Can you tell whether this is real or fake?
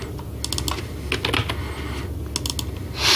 real